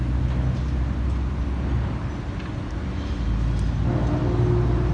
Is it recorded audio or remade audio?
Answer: recorded